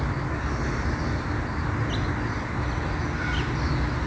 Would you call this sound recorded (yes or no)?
yes